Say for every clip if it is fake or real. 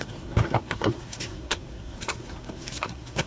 fake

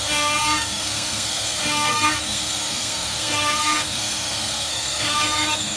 fake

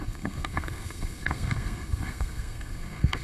fake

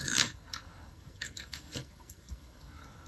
fake